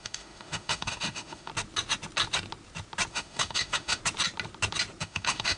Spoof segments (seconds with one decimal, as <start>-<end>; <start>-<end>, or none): 0.0-1.5; 3.1-4.0; 5.0-5.6